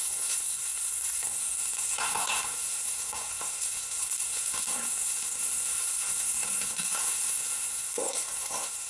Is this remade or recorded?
remade